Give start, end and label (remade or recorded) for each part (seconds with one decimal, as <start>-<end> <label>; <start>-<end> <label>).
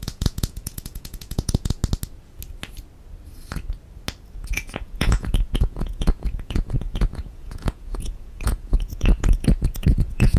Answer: 0.0-1.8 remade; 1.8-4.4 recorded; 4.4-10.4 remade